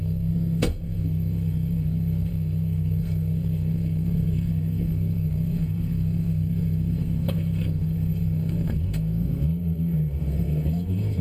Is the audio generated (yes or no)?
yes